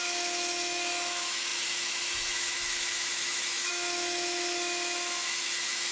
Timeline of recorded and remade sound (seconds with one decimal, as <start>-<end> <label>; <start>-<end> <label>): 0.0-5.9 remade